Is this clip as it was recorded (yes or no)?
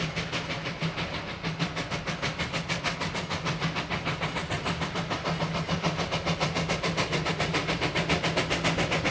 yes